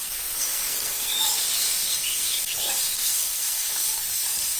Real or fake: fake